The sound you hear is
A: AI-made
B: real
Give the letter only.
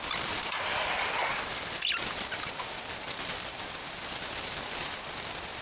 A